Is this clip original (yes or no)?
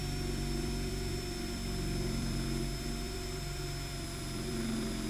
no